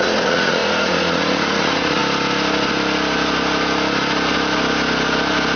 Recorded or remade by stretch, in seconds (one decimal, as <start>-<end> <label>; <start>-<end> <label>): 0.0-2.0 remade; 2.0-5.6 recorded